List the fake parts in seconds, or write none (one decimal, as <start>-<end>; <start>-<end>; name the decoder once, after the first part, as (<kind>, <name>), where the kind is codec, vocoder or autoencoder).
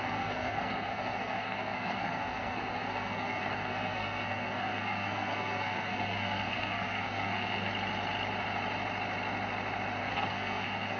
0.0-7.7 (codec, SNAC); 10.0-11.0